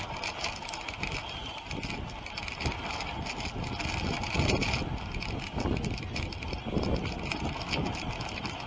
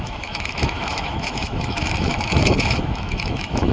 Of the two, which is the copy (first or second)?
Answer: second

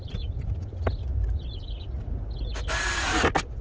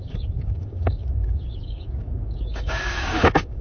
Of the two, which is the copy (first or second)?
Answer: second